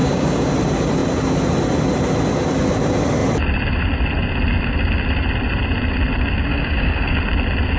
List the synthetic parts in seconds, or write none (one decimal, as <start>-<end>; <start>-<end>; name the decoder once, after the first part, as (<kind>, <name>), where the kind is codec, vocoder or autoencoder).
0.0-0.5 (codec, DAC); 6.5-7.2